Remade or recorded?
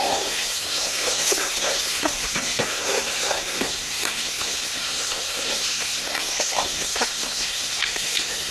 remade